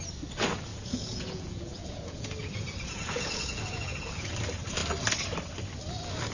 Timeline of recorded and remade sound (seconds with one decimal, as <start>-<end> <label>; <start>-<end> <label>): 0.0-0.7 recorded; 0.7-4.3 remade; 4.3-6.3 recorded